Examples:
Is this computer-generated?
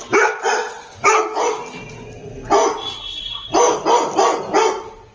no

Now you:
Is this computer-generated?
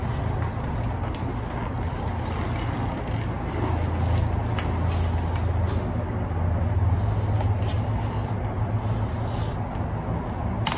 no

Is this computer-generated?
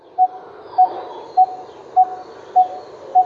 no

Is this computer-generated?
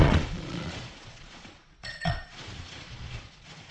yes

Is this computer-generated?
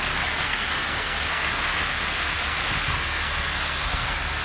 yes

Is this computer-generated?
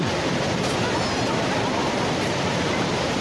no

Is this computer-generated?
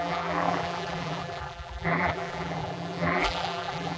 yes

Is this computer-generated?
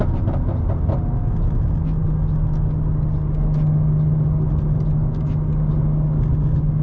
no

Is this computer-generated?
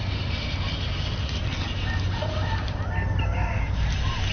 no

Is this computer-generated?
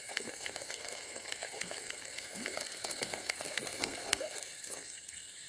yes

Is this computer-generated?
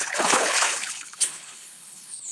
yes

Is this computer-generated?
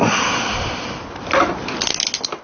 no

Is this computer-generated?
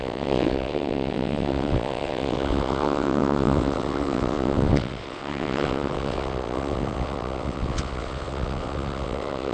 yes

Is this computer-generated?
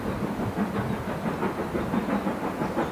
no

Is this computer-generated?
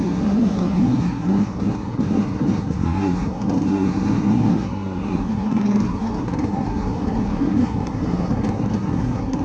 yes